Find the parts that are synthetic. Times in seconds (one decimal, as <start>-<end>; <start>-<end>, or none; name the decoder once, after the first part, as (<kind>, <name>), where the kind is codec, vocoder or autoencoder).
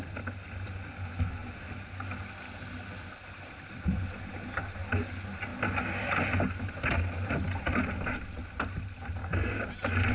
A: 9.2-9.7 (codec, DAC)